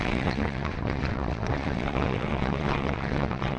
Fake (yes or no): yes